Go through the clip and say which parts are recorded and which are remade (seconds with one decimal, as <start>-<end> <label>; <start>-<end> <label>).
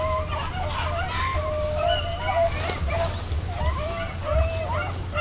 0.0-5.2 recorded